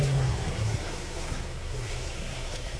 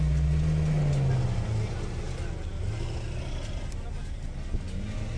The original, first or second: second